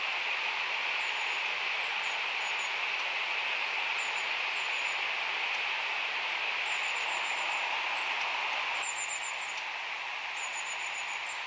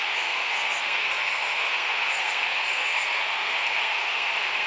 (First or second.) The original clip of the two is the first